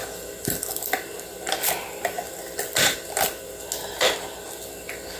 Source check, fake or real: real